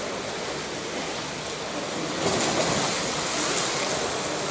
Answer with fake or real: real